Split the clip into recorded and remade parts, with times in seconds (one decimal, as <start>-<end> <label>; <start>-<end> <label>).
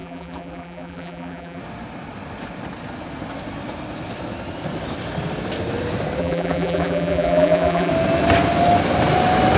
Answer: 0.0-1.6 remade; 1.6-6.2 recorded; 6.2-7.9 remade; 7.9-9.6 recorded